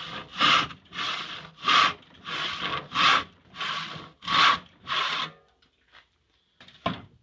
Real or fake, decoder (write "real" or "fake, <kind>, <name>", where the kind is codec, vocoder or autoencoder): real